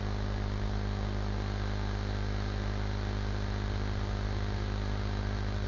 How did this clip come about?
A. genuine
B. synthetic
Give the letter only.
A